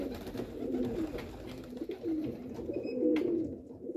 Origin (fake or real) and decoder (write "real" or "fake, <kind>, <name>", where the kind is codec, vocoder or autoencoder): real